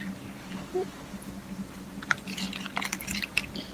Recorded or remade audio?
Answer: recorded